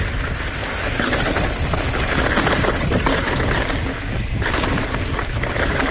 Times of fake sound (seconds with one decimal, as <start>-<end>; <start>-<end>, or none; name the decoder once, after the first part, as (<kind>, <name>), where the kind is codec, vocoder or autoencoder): none